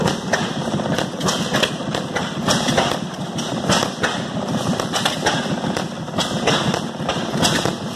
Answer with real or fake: fake